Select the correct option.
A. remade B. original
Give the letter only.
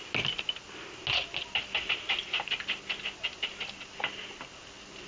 B